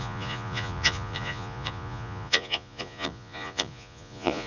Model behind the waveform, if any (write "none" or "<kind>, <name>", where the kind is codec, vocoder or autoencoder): vocoder, Vocos